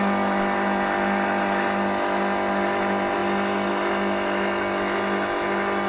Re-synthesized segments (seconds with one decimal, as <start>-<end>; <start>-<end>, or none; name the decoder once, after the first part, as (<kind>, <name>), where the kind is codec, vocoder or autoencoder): none